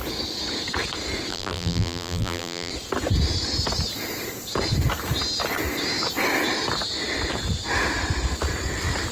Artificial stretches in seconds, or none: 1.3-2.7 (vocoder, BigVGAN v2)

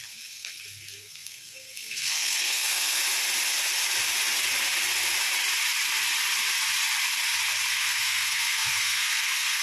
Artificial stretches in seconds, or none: 0.0-3.0 (codec, SNAC); 7.7-9.6

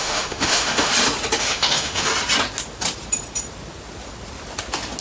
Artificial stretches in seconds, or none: 0.0-0.9 (autoencoder, DAC-VAE); 1.4-2.1

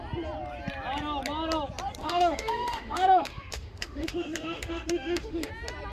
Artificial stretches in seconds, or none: 2.0-5.5 (autoencoder, DAC-VAE)

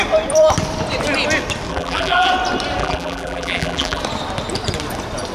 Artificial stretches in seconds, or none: 1.7-2.3 (vocoder, BigVGAN v2); 2.8-4.0

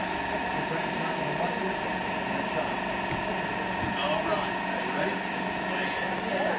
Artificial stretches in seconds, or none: 0.0-2.0 (vocoder, BigVGAN v2); 6.0-6.6

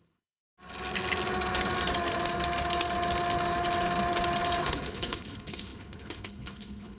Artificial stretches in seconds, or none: 0.0-0.4 (codec, HILCodec); 4.6-7.0

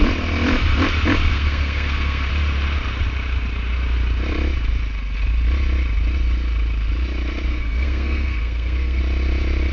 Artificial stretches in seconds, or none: 1.3-2.3 (codec, SNAC); 7.5-9.0